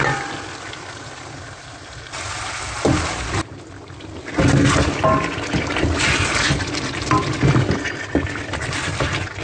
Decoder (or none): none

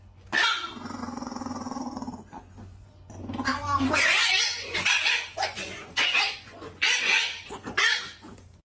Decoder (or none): vocoder, Vocos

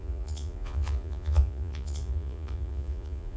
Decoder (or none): vocoder, Vocos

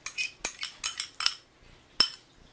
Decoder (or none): none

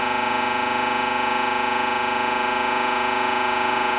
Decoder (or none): vocoder, Vocos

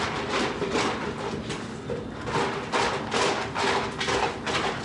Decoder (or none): none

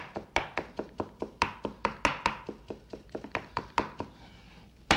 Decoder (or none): none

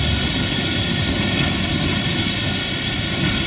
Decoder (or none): none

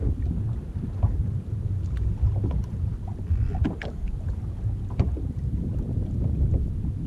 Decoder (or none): none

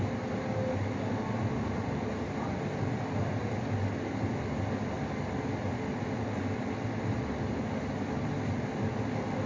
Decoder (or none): none